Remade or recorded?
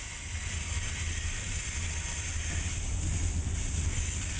recorded